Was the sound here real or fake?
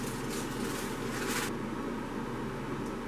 real